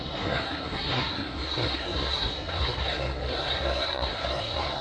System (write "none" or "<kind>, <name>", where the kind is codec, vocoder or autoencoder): codec, SNAC